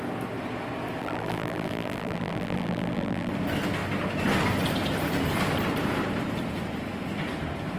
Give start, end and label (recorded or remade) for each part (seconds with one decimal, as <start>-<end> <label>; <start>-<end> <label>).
0.0-1.0 recorded; 1.0-3.3 remade; 3.3-7.8 recorded